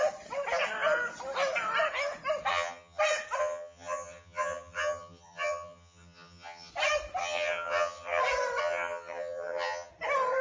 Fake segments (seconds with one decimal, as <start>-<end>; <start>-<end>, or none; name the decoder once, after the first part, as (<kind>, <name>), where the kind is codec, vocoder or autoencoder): 2.5-3.0 (vocoder, HiFi-GAN); 3.4-6.7; 7.2-8.2; 8.6-9.9

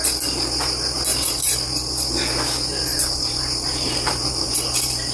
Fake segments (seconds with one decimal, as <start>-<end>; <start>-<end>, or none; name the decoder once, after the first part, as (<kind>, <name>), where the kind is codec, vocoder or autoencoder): 1.1-1.7 (vocoder, BigVGAN v2); 2.9-4.5

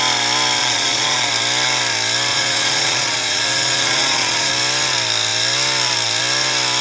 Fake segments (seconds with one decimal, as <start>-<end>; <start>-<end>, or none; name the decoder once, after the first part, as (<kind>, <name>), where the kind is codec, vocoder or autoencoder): 0.6-1.3 (vocoder, Vocos); 2.3-4.5

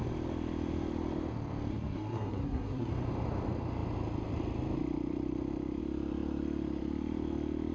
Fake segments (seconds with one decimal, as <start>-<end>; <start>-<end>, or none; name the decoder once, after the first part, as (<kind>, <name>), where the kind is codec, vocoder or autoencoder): 1.7-2.9 (codec, SNAC)